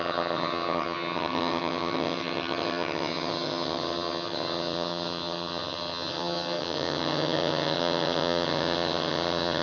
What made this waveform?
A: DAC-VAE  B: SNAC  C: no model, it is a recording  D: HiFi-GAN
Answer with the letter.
D